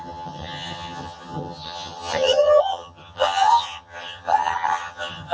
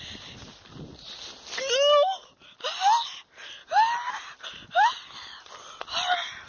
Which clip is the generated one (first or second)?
first